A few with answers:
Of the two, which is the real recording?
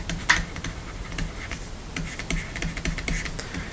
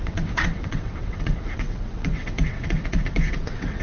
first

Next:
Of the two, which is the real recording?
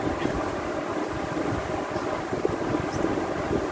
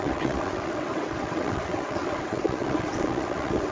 first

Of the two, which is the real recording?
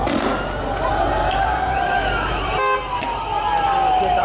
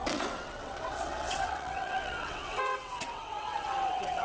first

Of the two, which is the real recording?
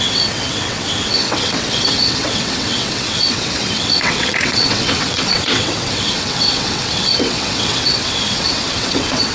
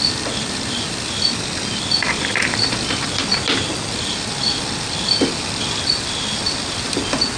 second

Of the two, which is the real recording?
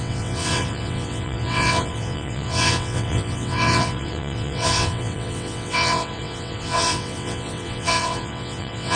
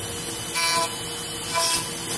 second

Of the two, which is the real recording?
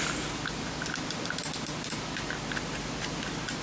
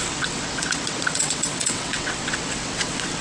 first